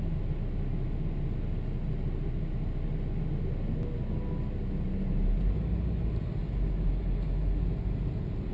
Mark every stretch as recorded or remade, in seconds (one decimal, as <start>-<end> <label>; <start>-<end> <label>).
0.0-8.5 recorded